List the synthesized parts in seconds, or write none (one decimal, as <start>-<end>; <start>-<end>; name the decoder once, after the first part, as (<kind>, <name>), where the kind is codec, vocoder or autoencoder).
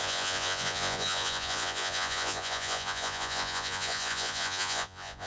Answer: 0.0-5.3 (vocoder, Vocos)